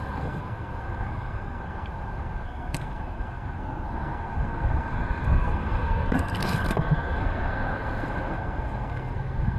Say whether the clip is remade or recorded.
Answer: remade